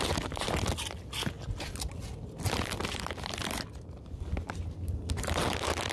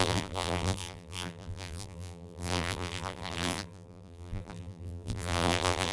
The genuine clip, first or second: first